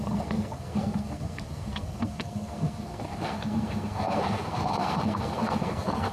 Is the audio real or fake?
fake